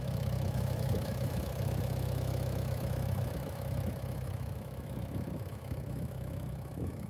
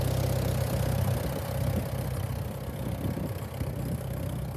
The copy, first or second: first